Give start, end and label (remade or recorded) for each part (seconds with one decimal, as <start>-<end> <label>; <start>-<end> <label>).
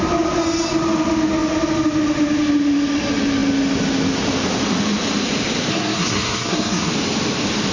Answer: 0.0-5.7 recorded; 5.7-6.9 remade; 6.9-7.7 recorded